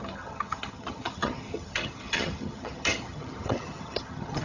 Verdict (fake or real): fake